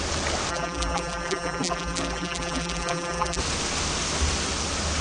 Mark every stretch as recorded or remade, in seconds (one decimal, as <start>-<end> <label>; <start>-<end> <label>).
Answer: 0.0-0.5 recorded; 0.5-3.4 remade; 3.4-5.0 recorded